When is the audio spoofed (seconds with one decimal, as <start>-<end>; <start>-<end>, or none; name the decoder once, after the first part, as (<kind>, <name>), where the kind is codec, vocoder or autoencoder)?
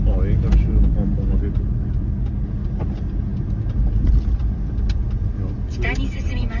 none